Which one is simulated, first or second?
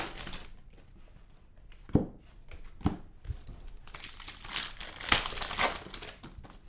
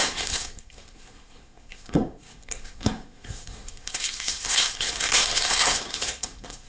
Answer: second